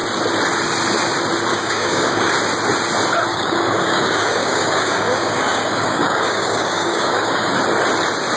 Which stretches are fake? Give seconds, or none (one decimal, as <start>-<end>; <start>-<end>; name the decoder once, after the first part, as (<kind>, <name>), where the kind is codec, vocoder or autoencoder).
1.5-2.3 (codec, DAC); 3.3-7.5